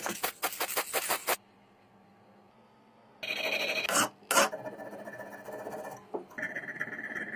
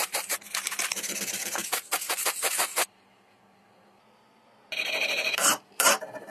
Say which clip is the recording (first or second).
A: first